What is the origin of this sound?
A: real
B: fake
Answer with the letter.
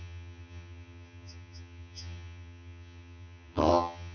B